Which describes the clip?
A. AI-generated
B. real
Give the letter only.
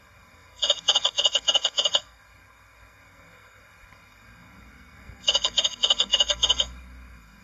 A